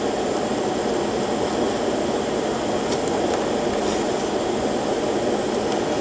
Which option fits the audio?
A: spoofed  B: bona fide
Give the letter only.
B